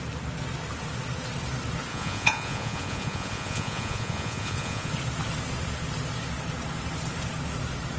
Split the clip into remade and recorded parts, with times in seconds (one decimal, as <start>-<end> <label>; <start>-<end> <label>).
0.0-1.9 recorded; 1.9-4.9 remade; 4.9-8.0 recorded